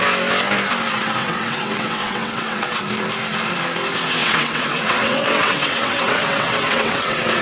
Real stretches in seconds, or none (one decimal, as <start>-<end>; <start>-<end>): 0.0-1.2; 2.8-4.2